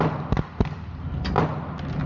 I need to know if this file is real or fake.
real